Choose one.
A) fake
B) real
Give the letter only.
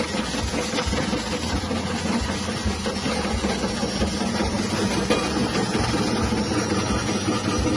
B